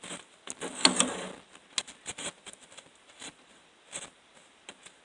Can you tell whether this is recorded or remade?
recorded